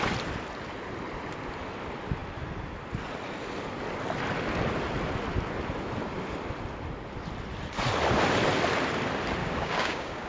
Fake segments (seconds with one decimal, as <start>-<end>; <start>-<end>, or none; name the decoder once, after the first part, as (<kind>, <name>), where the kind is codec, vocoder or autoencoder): 9.4-10.3 (codec, DAC)